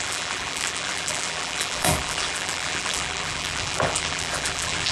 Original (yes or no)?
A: no